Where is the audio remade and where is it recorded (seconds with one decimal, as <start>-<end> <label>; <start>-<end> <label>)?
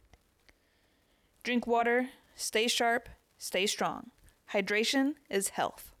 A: 0.0-6.0 recorded